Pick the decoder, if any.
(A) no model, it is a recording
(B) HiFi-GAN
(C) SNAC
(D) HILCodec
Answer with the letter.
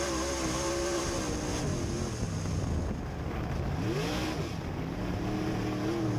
A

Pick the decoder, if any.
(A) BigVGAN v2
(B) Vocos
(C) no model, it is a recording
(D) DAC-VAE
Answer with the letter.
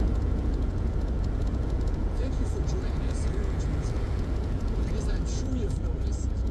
B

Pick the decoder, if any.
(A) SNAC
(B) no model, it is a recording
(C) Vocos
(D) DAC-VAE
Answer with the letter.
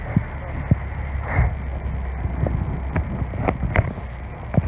B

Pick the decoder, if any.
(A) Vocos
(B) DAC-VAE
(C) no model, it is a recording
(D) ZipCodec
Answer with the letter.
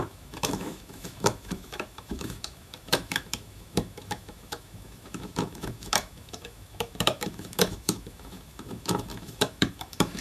B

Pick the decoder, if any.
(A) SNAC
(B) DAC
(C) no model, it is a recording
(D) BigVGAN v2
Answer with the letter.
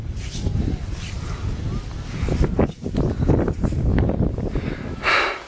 C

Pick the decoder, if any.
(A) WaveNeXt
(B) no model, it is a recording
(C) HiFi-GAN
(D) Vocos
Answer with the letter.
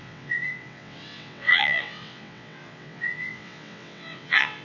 A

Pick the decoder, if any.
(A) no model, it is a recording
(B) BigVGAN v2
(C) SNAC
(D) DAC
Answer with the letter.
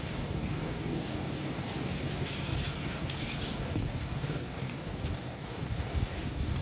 D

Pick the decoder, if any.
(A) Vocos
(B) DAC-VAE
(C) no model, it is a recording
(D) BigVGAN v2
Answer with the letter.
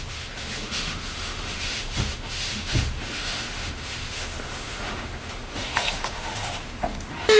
B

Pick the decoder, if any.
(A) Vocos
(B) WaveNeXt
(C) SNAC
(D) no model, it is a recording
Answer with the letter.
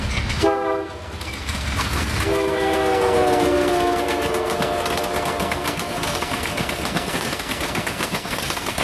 C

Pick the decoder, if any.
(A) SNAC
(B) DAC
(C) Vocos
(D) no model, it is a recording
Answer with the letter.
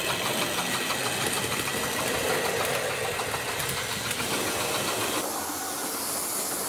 D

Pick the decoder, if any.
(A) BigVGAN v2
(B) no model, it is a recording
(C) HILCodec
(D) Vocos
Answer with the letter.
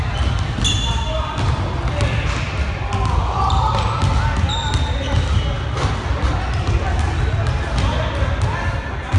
B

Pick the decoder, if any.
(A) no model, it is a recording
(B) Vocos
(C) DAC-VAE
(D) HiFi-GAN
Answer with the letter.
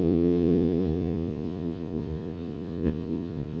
B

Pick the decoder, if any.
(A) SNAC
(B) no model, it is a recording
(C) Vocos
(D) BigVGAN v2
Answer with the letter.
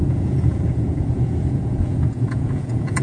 C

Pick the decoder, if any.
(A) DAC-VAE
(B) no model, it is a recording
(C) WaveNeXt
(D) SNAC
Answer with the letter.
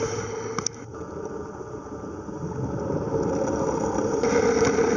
B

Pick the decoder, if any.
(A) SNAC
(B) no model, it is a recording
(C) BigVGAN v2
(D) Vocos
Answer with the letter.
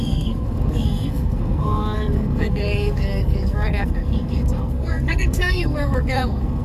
A